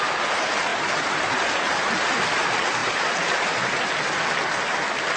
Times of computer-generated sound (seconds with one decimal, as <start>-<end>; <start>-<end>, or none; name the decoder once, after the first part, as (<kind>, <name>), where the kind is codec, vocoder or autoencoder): 0.7-1.9 (vocoder, BigVGAN v2); 2.8-3.9